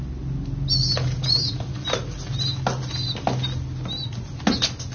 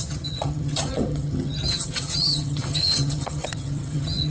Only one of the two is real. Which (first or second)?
first